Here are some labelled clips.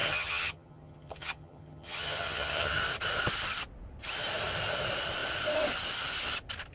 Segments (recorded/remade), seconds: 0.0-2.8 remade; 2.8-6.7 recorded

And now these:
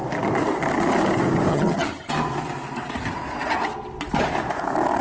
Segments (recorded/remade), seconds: 0.0-1.5 recorded; 1.5-2.1 remade; 2.1-5.0 recorded

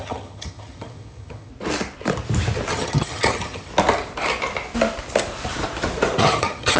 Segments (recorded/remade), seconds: 0.0-1.5 remade; 1.5-2.7 recorded; 2.7-3.7 remade; 3.7-6.2 recorded; 6.2-6.8 remade

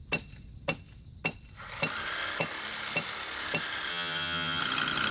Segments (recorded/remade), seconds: 0.0-3.9 recorded; 3.9-4.6 remade; 4.6-5.1 recorded